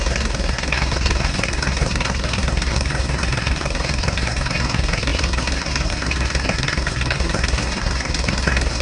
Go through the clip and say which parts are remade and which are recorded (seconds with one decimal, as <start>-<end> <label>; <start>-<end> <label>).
0.0-8.8 remade